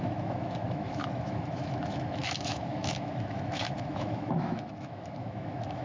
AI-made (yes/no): yes